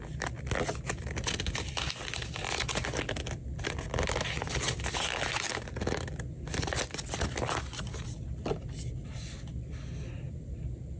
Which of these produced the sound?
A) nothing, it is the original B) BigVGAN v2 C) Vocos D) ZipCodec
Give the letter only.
A